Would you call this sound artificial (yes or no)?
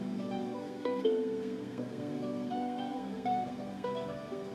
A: yes